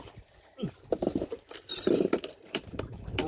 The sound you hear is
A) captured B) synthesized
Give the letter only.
B